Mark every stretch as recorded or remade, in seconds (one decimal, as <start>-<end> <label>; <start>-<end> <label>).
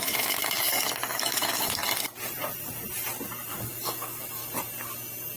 0.0-1.8 remade; 1.8-3.5 recorded; 3.5-4.4 remade; 4.4-5.4 recorded